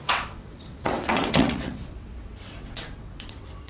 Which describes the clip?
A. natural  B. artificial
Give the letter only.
B